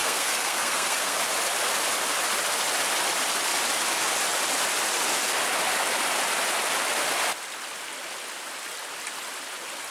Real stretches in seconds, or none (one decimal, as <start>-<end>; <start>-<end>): 1.2-9.9